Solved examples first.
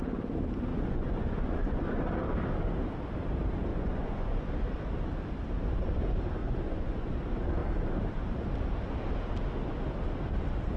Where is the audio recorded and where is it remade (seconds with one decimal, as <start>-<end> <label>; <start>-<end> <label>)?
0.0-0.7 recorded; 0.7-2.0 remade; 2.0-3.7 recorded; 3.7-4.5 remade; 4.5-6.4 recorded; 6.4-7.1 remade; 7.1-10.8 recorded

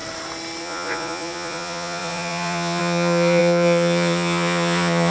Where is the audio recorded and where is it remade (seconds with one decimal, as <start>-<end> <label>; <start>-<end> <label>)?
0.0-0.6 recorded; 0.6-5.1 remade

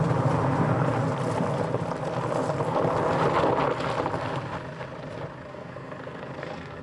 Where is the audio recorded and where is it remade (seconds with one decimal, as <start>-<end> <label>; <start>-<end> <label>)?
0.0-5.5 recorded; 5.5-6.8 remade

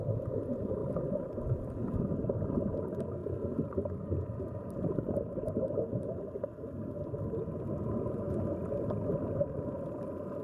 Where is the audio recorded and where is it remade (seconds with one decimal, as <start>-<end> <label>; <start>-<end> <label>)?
0.0-0.8 recorded; 0.8-2.0 remade; 2.0-3.2 recorded; 3.2-7.2 remade; 7.2-9.0 recorded; 9.0-10.4 remade